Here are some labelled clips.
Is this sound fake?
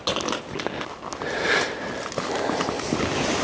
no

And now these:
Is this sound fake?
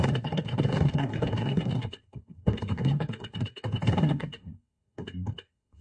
yes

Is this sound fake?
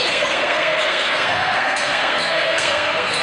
yes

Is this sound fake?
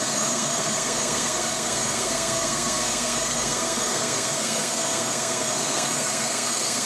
yes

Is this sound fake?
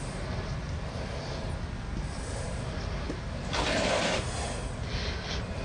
no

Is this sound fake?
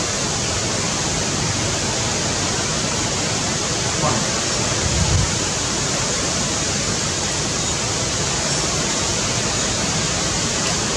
no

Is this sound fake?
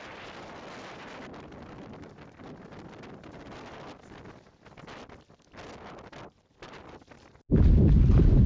no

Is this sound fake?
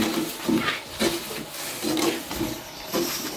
no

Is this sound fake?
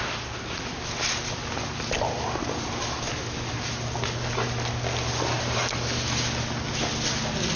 no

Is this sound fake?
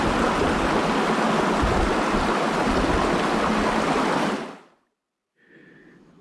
no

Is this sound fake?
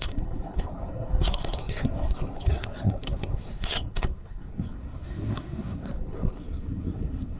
yes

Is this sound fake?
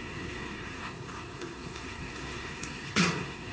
yes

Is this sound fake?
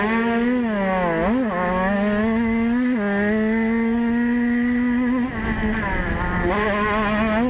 no